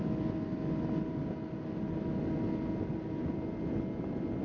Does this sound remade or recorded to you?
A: recorded